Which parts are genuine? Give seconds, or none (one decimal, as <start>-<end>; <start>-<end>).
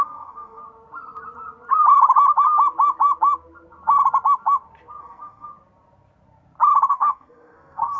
0.6-5.0; 5.5-6.9